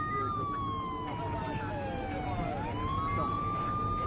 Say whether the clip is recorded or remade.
recorded